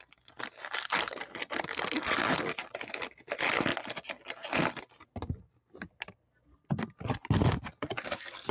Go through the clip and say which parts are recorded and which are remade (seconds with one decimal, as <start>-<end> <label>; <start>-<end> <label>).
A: 0.0-8.5 recorded